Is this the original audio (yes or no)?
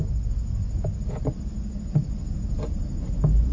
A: yes